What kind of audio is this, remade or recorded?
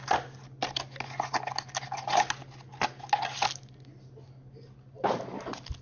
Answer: recorded